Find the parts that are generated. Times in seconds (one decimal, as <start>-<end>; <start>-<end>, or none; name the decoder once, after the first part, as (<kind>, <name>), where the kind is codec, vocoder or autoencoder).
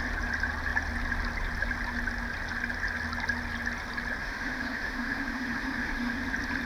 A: 4.2-6.2 (autoencoder, DAC-VAE)